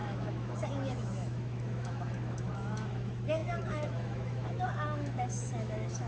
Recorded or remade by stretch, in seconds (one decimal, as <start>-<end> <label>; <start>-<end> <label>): 0.0-6.1 remade

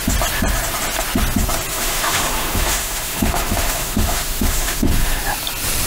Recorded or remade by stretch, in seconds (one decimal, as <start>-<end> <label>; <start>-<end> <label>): 0.0-1.7 recorded; 1.7-5.2 remade; 5.2-5.9 recorded